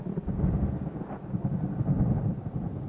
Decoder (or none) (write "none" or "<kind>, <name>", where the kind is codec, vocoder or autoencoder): none